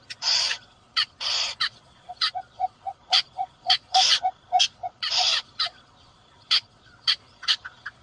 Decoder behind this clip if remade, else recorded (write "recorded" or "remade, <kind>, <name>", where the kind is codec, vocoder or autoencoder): remade, vocoder, Vocos